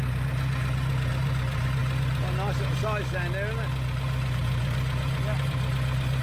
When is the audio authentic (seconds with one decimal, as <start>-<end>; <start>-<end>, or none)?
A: 0.0-6.2

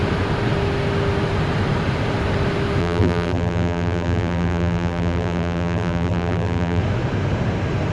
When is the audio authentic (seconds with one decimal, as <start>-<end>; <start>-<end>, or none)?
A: 0.0-2.8; 6.8-7.9